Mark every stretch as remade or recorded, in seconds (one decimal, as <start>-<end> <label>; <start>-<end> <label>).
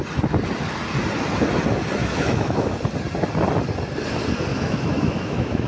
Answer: 0.0-2.0 recorded; 2.0-2.7 remade; 2.7-4.5 recorded; 4.5-5.7 remade